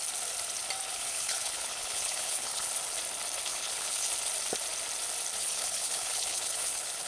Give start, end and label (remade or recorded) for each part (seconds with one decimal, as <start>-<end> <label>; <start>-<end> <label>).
0.0-0.9 recorded; 0.9-2.7 remade; 2.7-3.5 recorded; 3.5-4.1 remade; 4.1-5.4 recorded; 5.4-7.1 remade